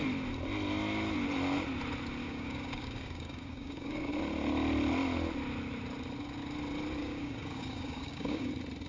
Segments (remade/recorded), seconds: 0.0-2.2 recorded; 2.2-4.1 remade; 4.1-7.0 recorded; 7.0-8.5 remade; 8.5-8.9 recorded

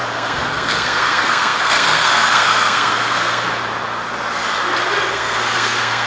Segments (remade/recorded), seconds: 0.0-3.5 remade; 3.5-5.1 recorded; 5.1-6.1 remade

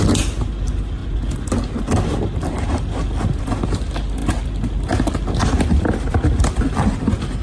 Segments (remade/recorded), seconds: 0.0-7.4 recorded